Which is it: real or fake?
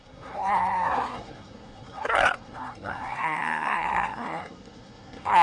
fake